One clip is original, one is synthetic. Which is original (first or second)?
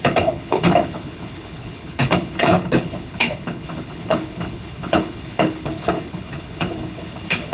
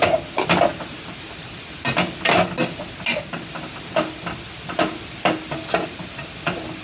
second